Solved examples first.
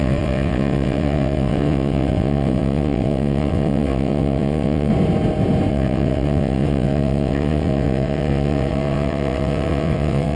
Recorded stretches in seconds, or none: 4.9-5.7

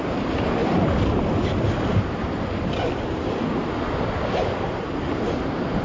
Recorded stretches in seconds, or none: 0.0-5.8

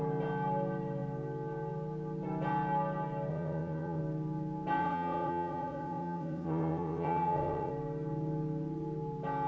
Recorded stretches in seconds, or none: 0.0-3.3; 4.0-4.8; 7.7-9.5

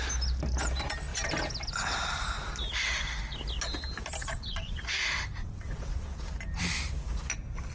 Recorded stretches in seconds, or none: 0.0-4.2; 4.8-5.4; 6.2-7.7

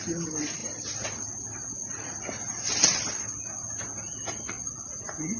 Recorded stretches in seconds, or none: 0.0-5.4